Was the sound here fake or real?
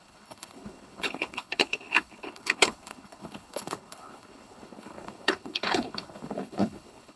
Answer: fake